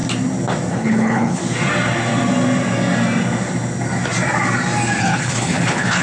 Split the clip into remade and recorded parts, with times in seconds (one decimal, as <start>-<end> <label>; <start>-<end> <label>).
0.0-0.7 recorded; 0.7-1.4 remade; 1.4-5.0 recorded; 5.0-6.0 remade